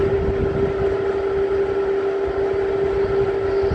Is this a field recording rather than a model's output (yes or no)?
yes